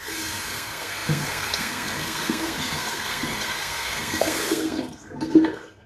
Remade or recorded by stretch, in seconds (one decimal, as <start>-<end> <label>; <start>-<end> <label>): 0.0-5.9 remade